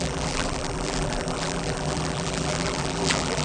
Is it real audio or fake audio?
fake